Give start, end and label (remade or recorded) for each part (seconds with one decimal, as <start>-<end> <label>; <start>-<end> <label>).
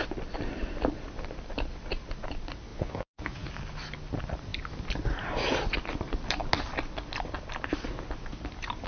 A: 0.0-2.7 recorded; 2.7-3.5 remade; 3.5-8.9 recorded